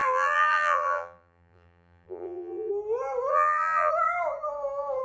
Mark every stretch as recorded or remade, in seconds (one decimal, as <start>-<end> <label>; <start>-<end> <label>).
0.0-2.7 remade; 2.7-3.3 recorded; 3.3-3.9 remade; 3.9-5.0 recorded

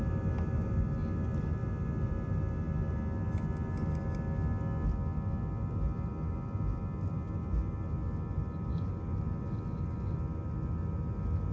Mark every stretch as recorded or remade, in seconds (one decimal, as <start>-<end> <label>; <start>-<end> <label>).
0.0-11.5 recorded

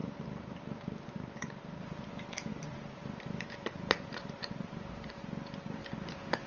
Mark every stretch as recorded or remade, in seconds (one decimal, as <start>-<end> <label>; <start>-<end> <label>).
0.0-2.1 remade; 2.1-2.5 recorded; 2.5-5.2 remade; 5.2-6.5 recorded

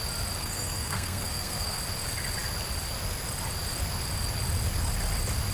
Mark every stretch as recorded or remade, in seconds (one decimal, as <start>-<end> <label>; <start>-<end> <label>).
0.0-0.4 recorded; 0.4-1.8 remade; 1.8-5.5 recorded

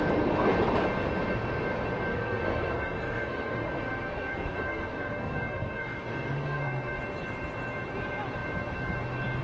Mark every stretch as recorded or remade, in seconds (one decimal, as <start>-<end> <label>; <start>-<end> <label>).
0.0-2.1 recorded; 2.1-7.0 remade; 7.0-9.4 recorded

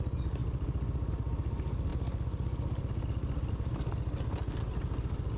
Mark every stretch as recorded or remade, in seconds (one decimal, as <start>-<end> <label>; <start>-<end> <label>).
0.0-5.4 recorded

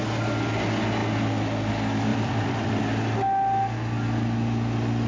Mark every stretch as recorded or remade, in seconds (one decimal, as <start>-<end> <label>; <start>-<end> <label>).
0.0-2.1 recorded; 2.1-2.8 remade; 2.8-5.1 recorded

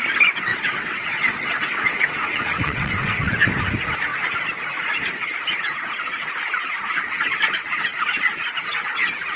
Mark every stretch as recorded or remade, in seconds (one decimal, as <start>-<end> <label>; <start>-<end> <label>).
0.0-0.5 recorded; 0.5-3.5 remade; 3.5-9.4 recorded